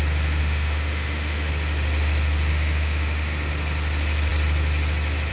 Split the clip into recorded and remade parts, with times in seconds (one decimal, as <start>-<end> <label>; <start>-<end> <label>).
0.0-0.4 recorded; 0.4-1.5 remade; 1.5-2.5 recorded; 2.5-3.5 remade; 3.5-5.3 recorded

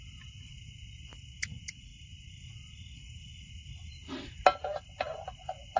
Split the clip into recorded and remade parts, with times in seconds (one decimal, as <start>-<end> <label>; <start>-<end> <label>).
0.0-1.9 recorded; 1.9-2.5 remade; 2.5-5.8 recorded